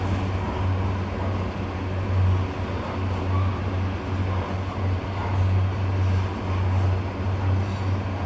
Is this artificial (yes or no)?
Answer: no